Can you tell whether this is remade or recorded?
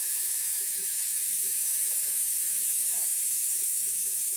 remade